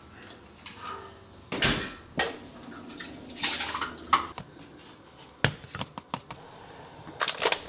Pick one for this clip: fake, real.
real